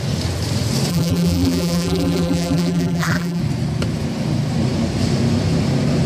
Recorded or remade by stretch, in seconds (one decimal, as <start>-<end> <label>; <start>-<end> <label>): 0.0-0.9 recorded; 0.9-3.4 remade; 3.4-6.1 recorded